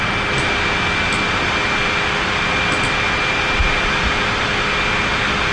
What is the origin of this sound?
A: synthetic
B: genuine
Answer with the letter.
B